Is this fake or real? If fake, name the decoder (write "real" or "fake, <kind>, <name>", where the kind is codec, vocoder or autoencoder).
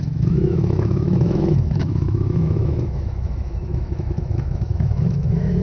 fake, autoencoder, DAC-VAE